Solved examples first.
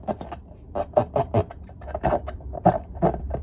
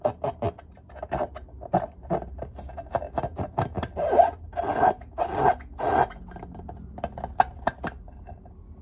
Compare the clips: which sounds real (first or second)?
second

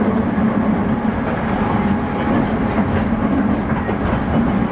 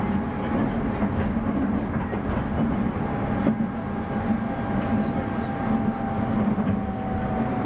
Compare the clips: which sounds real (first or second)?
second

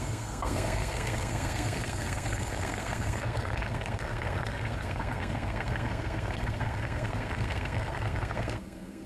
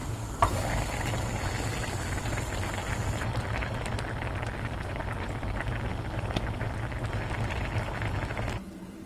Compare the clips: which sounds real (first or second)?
second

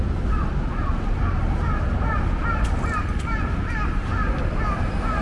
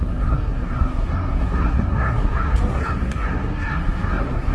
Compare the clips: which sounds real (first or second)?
first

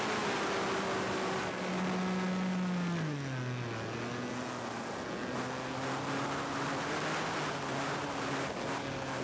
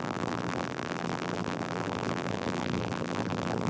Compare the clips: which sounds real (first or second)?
first